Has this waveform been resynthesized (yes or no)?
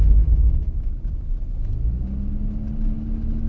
no